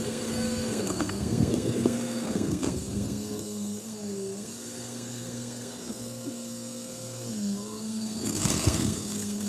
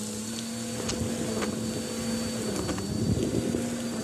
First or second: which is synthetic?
first